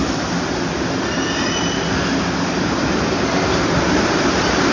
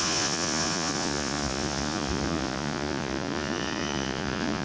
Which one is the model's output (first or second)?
second